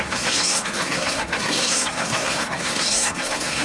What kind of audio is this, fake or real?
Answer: fake